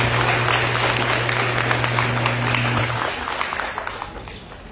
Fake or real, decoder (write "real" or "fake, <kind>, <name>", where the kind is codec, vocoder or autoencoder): real